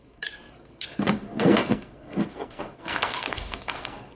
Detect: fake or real fake